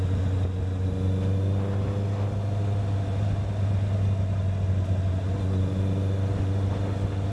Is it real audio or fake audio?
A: real